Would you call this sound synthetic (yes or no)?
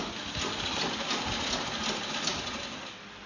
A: no